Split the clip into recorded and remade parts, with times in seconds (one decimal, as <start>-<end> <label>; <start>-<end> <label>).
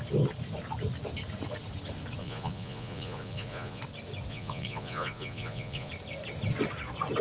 0.0-2.2 recorded; 2.2-3.8 remade; 3.8-4.3 recorded; 4.3-5.9 remade; 5.9-7.2 recorded